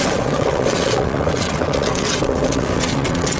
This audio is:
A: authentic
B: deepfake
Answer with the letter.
B